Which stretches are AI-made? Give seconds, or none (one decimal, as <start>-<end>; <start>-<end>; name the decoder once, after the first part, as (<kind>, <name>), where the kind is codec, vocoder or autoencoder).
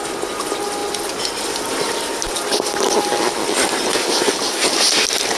0.8-2.8 (vocoder, BigVGAN v2)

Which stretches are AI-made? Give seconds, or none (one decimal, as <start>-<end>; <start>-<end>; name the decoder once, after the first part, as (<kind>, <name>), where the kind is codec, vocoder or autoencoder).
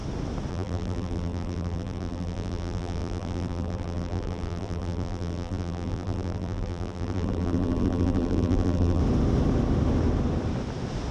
0.5-9.0 (vocoder, BigVGAN v2)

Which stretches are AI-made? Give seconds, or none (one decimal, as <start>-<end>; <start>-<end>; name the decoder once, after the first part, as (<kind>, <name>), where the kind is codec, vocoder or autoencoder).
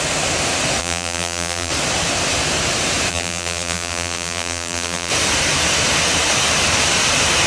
0.8-1.7 (vocoder, BigVGAN v2); 3.1-5.1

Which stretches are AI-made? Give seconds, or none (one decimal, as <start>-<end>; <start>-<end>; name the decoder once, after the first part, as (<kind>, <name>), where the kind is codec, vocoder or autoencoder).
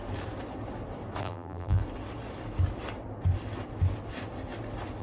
1.2-1.8 (vocoder, BigVGAN v2)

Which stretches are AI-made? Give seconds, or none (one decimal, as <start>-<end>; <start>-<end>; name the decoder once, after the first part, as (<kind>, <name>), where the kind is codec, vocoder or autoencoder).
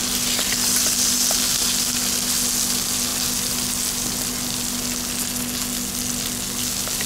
none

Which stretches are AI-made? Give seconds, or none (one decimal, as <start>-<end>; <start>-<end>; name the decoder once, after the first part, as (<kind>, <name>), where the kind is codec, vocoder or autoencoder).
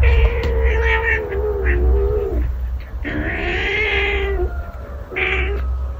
none